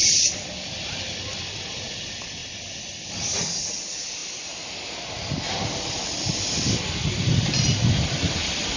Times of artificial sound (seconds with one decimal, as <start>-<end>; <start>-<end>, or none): none